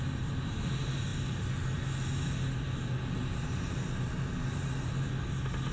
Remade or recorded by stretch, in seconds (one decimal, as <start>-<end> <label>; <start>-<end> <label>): 0.0-5.7 recorded